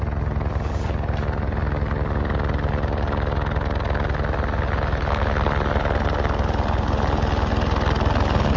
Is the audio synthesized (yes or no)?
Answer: no